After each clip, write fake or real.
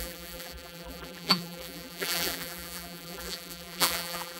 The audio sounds fake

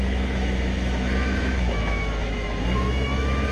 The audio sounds fake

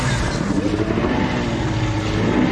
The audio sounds real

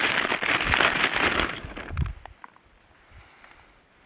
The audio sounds real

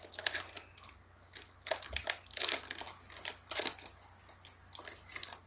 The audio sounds real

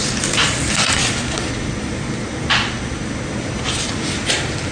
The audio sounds real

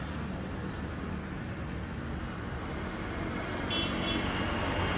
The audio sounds real